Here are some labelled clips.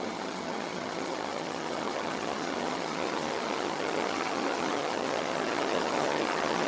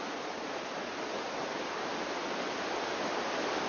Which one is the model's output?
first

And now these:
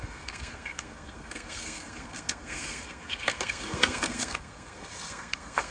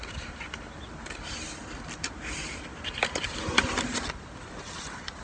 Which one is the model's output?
first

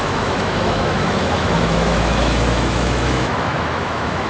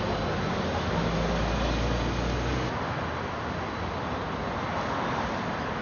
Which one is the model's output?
first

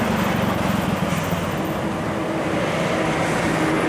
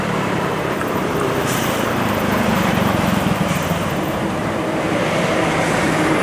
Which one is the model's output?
second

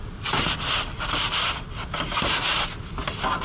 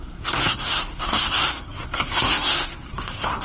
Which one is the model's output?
second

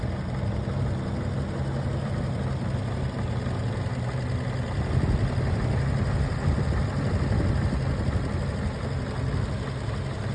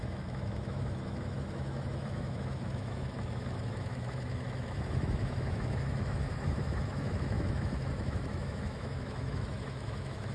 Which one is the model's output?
second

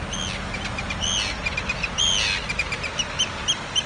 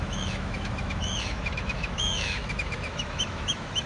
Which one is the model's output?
second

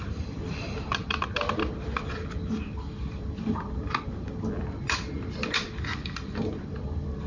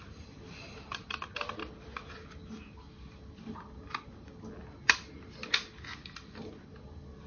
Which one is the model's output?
first